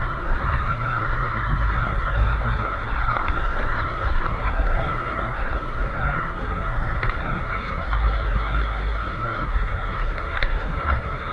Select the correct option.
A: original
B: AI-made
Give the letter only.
B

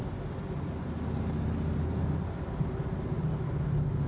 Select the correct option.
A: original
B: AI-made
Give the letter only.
A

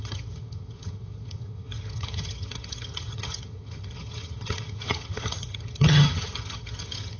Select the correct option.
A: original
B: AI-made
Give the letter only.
B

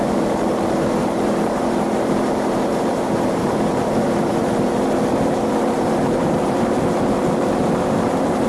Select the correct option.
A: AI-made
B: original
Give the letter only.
A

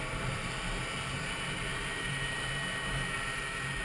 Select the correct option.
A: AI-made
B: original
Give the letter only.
A